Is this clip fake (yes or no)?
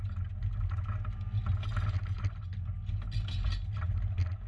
no